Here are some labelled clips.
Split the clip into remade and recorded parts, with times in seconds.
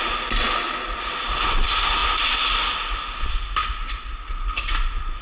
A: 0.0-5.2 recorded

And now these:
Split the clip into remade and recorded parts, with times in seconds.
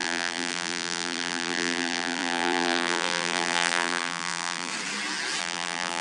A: 0.0-4.7 remade; 4.7-5.4 recorded; 5.4-6.0 remade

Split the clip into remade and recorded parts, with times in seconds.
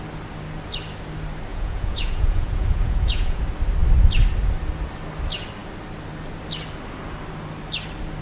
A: 0.0-1.5 recorded; 1.5-3.4 remade; 3.4-8.2 recorded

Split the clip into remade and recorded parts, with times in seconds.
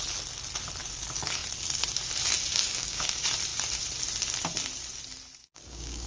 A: 0.0-2.5 recorded; 2.5-3.1 remade; 3.1-5.4 recorded; 5.4-6.1 remade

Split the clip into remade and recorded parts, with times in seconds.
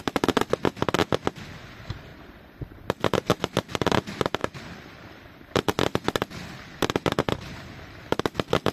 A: 0.0-2.1 recorded; 2.1-3.9 remade; 3.9-4.4 recorded; 4.4-8.2 remade; 8.2-8.7 recorded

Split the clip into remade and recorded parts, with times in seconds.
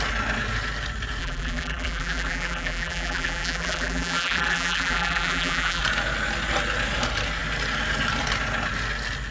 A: 0.0-1.2 recorded; 1.2-5.8 remade; 5.8-9.3 recorded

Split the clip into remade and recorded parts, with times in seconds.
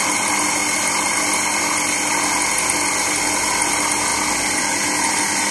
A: 0.0-5.5 recorded